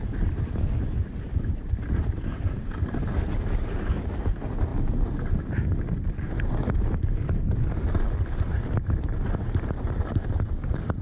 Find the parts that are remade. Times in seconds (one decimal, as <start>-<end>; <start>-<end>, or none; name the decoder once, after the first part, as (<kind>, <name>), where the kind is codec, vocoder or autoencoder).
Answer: none